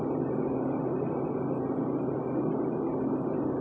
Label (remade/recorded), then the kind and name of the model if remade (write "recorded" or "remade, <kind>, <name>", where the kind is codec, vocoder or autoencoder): recorded